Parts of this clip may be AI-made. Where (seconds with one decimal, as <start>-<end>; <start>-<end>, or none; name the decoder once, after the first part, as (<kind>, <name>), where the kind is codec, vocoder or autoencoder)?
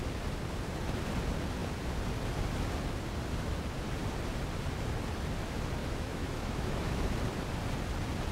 5.8-7.1 (autoencoder, DAC-VAE)